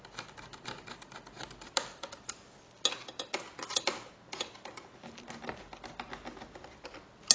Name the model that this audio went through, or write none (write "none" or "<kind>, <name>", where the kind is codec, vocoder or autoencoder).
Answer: none